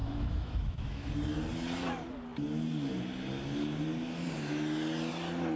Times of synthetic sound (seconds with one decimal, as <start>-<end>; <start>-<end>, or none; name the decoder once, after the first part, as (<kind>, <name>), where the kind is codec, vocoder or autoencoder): 0.0-1.1 (autoencoder, DAC-VAE)